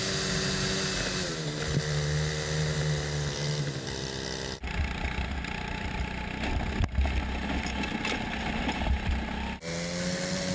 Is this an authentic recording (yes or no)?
yes